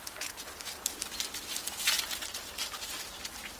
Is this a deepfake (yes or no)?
no